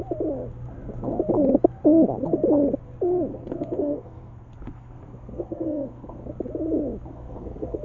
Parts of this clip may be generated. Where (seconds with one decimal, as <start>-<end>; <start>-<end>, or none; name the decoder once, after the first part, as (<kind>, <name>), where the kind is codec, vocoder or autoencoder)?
3.3-6.3 (codec, SNAC); 7.1-7.8